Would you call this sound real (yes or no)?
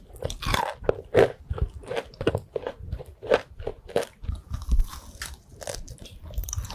yes